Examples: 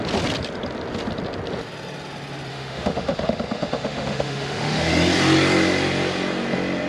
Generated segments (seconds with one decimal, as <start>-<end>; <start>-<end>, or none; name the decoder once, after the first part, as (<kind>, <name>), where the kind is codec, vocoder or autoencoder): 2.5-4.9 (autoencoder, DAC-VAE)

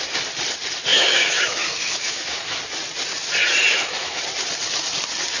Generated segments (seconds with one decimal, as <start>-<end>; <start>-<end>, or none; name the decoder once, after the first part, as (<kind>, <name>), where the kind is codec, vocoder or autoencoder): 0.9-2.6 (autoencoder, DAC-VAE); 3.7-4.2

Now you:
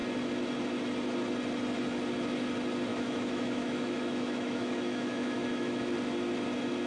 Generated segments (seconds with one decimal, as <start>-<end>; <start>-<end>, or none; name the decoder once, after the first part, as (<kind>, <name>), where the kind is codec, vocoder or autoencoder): 2.9-5.8 (autoencoder, DAC-VAE)

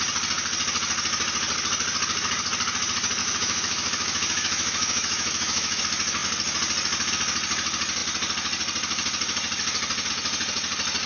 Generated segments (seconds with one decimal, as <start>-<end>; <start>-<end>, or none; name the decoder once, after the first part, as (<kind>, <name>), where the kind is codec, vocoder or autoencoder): 3.2-5.8 (autoencoder, DAC-VAE)

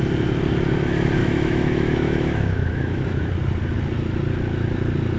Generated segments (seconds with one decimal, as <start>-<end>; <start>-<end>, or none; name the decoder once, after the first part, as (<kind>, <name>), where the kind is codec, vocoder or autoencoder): 1.2-3.3 (autoencoder, DAC-VAE)